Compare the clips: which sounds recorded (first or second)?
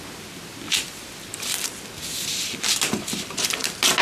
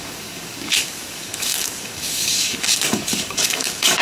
first